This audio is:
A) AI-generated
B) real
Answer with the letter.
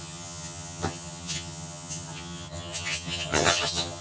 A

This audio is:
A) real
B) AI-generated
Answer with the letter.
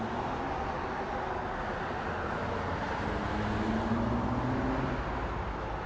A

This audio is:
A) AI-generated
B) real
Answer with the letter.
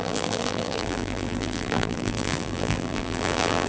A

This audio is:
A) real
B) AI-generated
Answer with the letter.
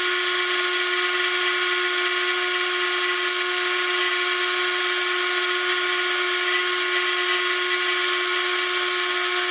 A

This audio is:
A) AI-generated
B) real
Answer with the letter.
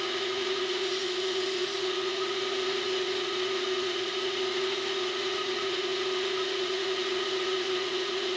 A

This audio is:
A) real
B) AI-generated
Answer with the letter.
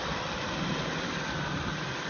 A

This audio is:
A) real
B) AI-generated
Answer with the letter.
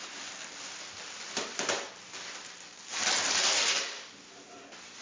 A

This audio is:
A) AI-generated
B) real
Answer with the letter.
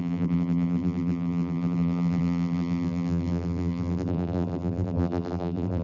A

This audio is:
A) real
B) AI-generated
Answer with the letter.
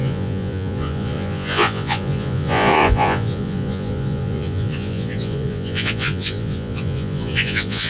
B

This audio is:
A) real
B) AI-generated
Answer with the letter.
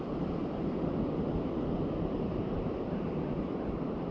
A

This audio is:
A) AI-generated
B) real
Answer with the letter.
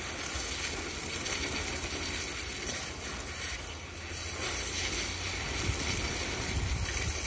B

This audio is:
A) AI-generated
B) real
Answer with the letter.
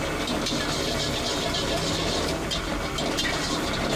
B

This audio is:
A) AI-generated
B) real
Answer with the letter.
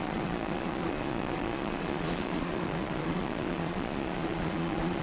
A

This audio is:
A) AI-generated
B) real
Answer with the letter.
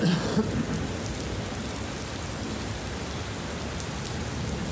B